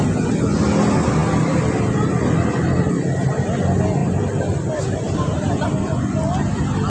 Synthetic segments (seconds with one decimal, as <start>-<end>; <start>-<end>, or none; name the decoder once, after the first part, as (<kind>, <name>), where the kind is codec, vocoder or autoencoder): 4.0-5.5 (vocoder, BigVGAN v2)